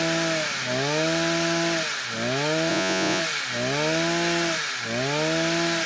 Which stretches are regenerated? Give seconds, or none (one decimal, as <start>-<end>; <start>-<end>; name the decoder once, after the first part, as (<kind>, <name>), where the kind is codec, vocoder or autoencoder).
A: 2.7-3.2 (vocoder, Vocos)